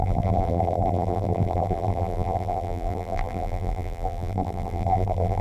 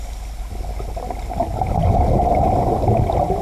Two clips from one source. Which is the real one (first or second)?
second